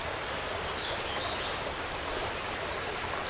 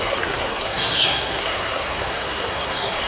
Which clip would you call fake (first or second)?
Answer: second